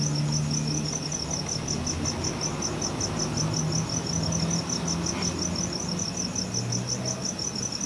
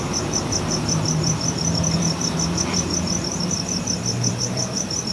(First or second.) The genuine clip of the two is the first